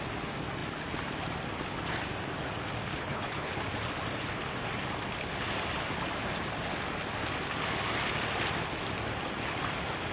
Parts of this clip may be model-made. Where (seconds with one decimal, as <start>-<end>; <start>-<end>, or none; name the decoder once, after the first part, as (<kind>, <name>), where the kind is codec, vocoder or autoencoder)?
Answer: 2.9-3.5 (codec, HILCodec)